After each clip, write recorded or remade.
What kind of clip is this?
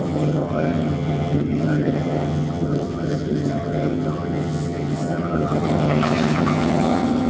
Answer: remade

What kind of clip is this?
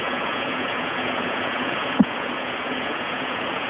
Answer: remade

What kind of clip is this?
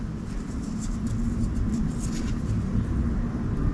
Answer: recorded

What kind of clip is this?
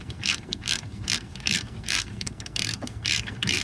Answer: remade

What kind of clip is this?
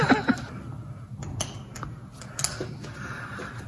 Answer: recorded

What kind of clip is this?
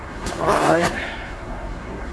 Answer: remade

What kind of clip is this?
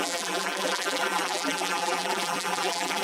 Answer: remade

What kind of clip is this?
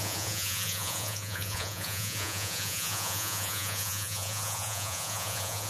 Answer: remade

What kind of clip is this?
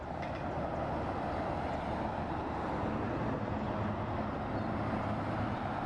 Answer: recorded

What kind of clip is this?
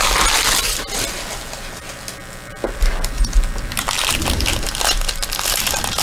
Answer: recorded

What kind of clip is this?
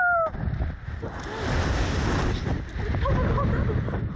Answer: recorded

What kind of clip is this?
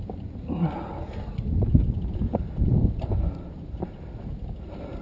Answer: recorded